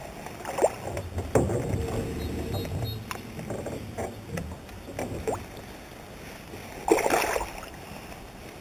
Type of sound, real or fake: real